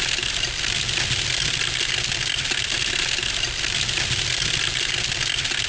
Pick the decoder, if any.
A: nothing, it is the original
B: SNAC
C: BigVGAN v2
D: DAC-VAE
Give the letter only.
A